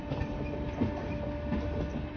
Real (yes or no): yes